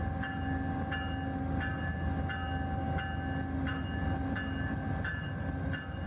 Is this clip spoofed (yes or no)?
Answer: no